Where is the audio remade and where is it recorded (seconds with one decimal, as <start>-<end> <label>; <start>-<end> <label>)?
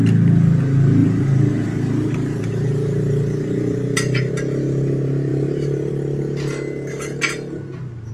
0.0-1.0 recorded; 1.0-4.3 remade; 4.3-8.1 recorded